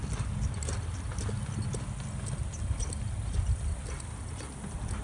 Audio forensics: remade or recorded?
recorded